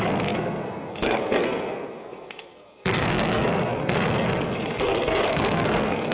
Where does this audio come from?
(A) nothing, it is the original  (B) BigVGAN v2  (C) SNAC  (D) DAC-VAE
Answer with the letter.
C